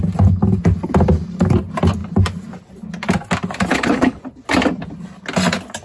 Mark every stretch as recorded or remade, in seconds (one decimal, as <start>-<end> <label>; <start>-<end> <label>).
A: 0.0-3.7 recorded; 3.7-4.2 remade; 4.2-5.8 recorded